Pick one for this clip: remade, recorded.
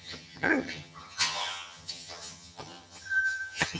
remade